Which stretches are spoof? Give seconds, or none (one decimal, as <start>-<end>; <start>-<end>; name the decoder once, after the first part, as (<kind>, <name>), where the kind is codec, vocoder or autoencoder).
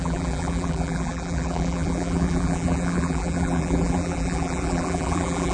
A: 0.0-5.5 (vocoder, BigVGAN v2)